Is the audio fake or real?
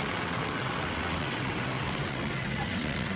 fake